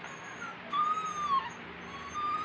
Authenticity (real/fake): real